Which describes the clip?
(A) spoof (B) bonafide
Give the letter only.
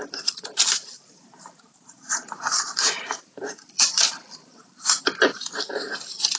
A